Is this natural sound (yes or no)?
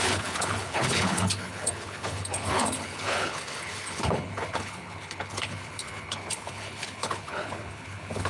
no